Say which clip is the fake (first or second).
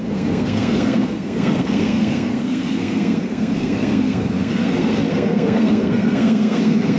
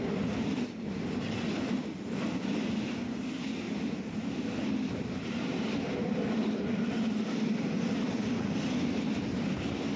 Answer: first